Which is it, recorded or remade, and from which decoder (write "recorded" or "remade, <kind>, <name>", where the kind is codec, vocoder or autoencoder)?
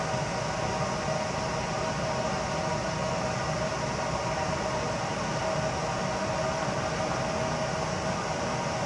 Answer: recorded